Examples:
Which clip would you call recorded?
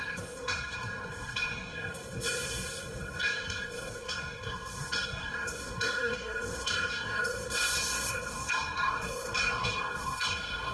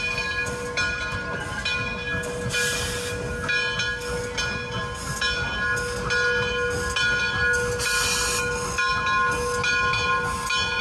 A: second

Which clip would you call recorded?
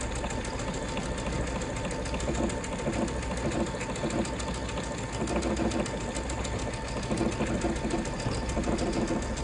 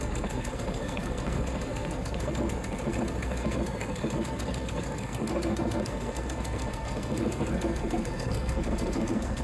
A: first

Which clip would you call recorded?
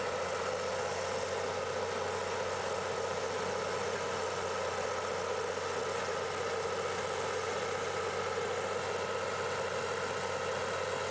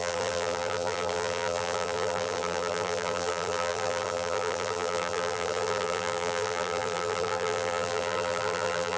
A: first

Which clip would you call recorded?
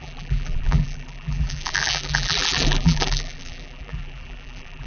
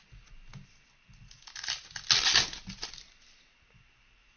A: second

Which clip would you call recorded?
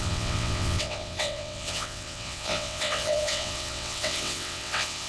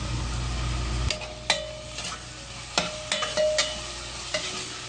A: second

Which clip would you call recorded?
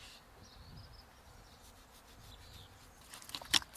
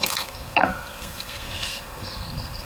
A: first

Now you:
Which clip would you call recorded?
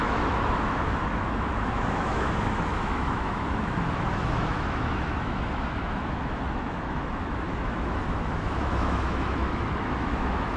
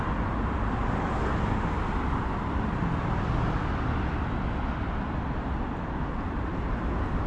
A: second